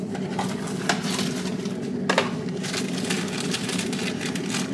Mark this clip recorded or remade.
recorded